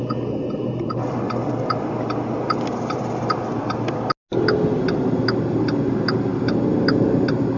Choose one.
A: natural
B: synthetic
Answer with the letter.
A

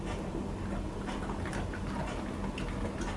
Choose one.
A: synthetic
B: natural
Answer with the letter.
B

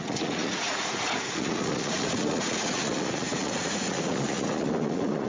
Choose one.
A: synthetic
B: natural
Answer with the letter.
A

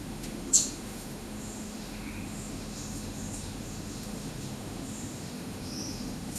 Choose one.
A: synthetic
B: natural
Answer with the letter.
A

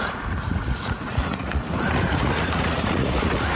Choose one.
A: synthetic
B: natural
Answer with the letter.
A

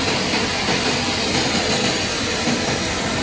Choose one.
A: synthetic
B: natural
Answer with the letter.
B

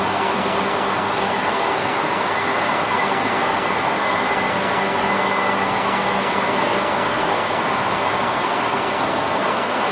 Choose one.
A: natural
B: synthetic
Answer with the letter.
B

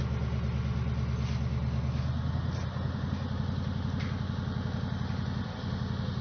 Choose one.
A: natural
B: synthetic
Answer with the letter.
A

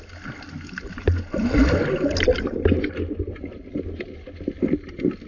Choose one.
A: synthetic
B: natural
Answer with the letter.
B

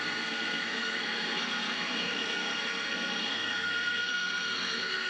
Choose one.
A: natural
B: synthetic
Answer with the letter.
B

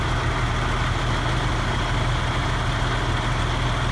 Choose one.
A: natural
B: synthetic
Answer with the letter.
A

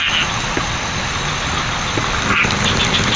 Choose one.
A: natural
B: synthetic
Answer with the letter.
A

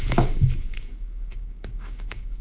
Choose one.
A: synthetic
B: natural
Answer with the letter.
A